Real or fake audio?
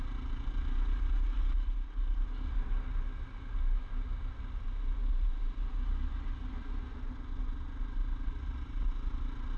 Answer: real